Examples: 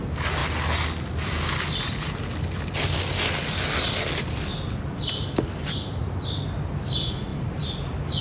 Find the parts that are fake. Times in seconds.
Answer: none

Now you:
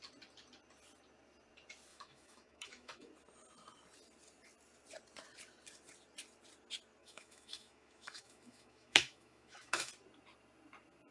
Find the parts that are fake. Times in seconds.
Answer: 1.9-3.1; 7.0-9.9

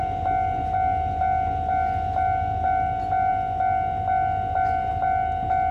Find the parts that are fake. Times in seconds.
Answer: none

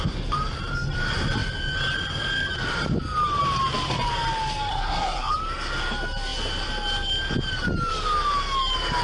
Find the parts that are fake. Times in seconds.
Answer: 4.7-5.3